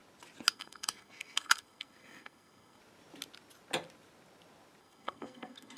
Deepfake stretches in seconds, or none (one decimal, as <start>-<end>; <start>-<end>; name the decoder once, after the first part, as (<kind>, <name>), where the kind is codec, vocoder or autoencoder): 0.5-2.8 (codec, SNAC); 4.8-5.8